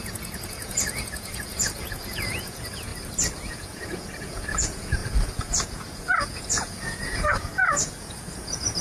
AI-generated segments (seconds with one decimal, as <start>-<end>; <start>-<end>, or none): 0.0-2.9; 3.5-8.8